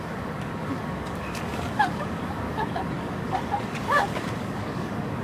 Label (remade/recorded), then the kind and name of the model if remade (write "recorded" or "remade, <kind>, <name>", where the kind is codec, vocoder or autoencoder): remade, codec, DAC